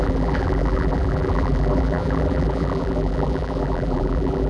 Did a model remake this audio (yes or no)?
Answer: yes